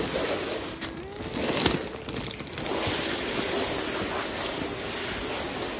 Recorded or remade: recorded